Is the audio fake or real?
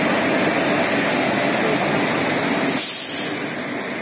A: real